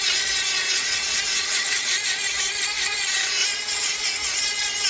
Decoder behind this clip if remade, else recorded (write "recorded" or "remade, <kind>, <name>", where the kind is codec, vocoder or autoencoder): remade, vocoder, WaveNeXt